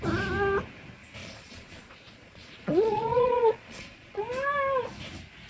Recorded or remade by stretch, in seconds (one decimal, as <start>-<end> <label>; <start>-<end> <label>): 0.0-1.2 recorded; 1.2-4.2 remade; 4.2-5.5 recorded